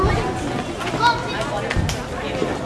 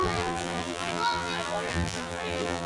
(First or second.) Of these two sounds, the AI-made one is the second